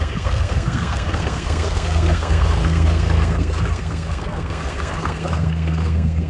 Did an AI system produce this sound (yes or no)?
yes